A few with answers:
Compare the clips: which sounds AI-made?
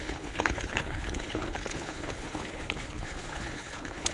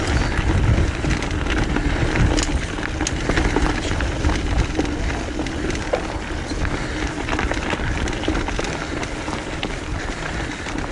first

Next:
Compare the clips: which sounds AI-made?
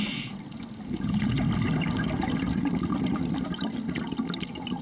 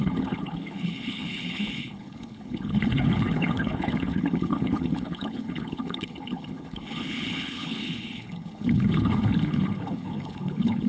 second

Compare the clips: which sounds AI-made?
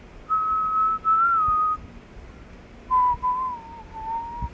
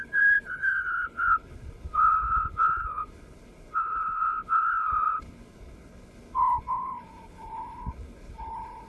second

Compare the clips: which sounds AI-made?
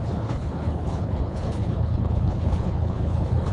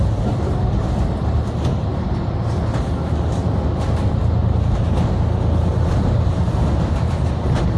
first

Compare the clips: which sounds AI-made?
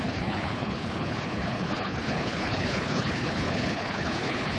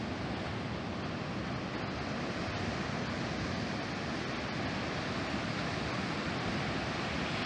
first